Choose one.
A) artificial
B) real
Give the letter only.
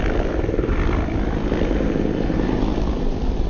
B